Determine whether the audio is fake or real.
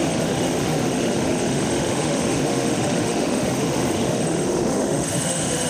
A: fake